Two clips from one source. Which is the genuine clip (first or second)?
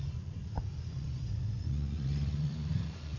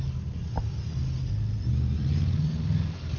second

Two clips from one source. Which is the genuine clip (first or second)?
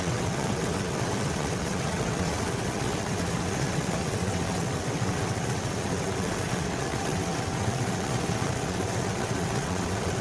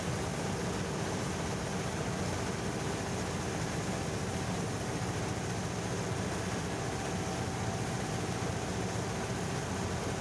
second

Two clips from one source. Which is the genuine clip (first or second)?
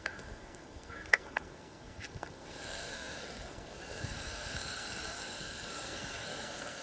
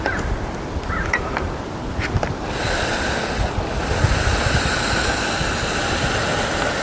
second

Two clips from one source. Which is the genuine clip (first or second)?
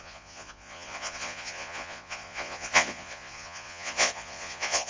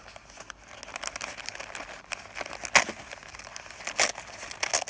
second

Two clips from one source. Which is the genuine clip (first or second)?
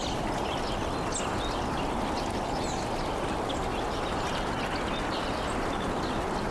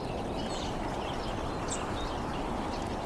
first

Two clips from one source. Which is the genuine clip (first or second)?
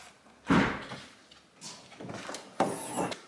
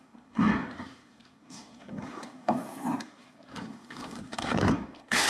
first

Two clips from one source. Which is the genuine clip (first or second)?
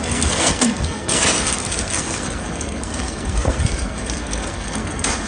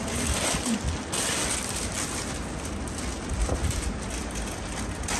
second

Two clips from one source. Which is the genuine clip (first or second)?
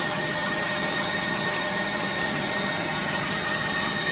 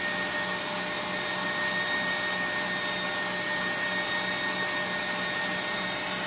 second